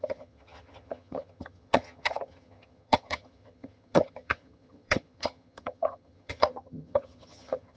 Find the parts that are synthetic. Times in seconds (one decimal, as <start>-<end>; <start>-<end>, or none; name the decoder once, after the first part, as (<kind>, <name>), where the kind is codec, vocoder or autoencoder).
0.0-7.8 (vocoder, HiFi-GAN)